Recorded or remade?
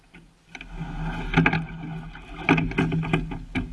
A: recorded